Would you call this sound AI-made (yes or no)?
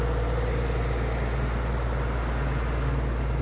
no